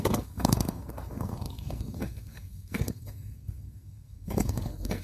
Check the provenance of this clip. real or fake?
fake